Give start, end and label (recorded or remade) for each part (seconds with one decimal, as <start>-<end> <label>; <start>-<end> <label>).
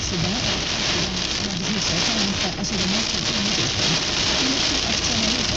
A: 0.0-5.6 recorded